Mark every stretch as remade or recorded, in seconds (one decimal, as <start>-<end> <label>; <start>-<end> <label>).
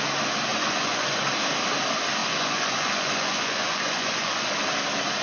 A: 0.0-0.5 recorded; 0.5-1.2 remade; 1.2-2.2 recorded; 2.2-4.5 remade; 4.5-5.2 recorded